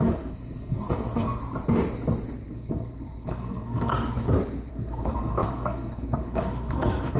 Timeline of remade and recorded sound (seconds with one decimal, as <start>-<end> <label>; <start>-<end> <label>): 0.0-1.4 remade; 1.4-2.5 recorded; 2.5-3.9 remade; 3.9-4.7 recorded; 4.7-7.2 remade